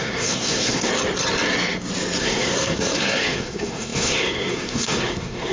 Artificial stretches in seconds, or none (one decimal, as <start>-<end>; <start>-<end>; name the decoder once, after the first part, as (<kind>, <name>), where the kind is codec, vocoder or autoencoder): 0.0-0.9 (codec, SNAC); 2.2-5.5